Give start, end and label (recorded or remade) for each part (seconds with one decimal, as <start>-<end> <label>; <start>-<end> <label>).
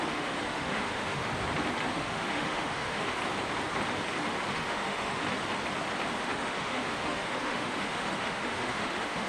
0.0-1.3 remade; 1.3-1.9 recorded; 1.9-3.2 remade; 3.2-4.5 recorded; 4.5-5.2 remade; 5.2-6.2 recorded; 6.2-9.3 remade